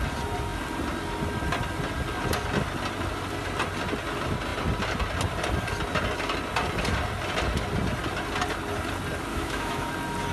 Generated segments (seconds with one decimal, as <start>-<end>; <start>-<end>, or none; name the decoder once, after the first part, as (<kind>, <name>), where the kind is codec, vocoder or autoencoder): 9.3-9.9 (autoencoder, DAC-VAE)